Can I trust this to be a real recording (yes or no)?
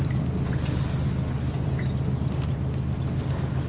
yes